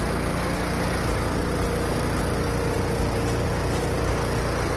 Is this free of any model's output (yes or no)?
yes